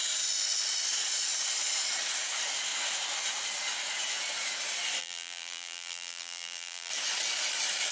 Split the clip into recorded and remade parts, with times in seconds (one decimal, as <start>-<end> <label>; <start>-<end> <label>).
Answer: 0.0-5.0 recorded; 5.0-6.9 remade; 6.9-7.9 recorded